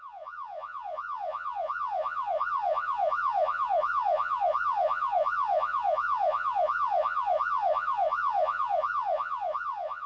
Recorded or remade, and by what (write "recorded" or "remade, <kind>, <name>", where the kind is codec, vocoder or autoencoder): remade, vocoder, Vocos